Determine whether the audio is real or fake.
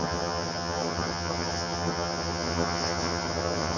fake